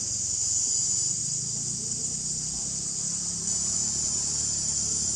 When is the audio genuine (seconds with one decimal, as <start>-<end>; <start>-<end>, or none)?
1.2-2.0